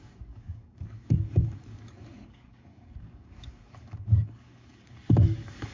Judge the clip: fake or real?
fake